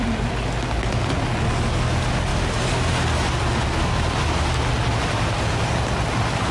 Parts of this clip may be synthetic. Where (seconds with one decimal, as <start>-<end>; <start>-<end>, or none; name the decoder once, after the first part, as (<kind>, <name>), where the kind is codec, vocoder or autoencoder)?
none